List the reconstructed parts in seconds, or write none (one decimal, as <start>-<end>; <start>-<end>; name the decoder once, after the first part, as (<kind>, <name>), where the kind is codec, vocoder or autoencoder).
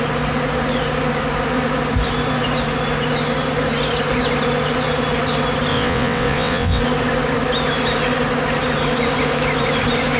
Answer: 5.7-6.8 (vocoder, WaveNeXt)